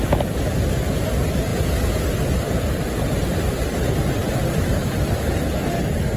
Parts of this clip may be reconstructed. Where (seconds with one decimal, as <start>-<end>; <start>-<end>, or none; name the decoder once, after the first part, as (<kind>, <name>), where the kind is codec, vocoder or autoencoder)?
none